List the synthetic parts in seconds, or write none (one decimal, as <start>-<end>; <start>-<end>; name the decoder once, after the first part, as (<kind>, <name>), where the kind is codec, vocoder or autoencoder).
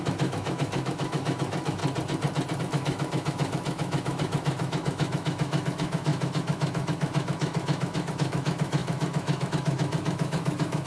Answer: 0.0-1.8 (autoencoder, DAC-VAE); 2.6-10.9